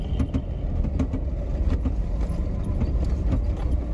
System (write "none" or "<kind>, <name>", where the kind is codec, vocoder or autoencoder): none